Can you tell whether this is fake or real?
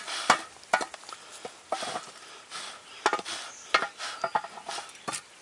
real